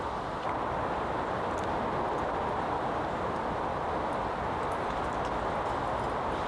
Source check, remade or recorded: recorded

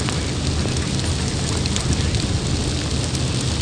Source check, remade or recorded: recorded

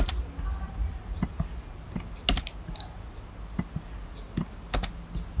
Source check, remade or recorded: recorded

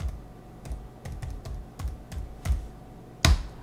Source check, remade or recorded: recorded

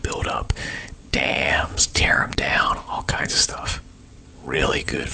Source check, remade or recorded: remade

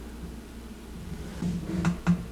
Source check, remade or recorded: recorded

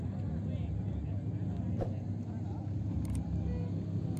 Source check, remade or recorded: recorded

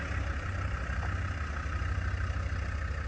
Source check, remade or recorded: recorded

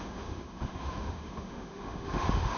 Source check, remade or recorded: remade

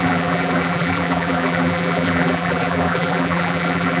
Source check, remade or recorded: remade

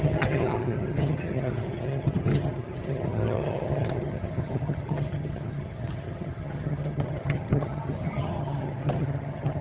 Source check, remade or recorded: remade